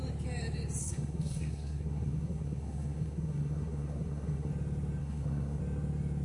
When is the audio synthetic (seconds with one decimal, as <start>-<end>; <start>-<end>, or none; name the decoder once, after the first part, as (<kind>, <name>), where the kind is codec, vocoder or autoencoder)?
0.8-4.5 (codec, SNAC); 5.0-5.6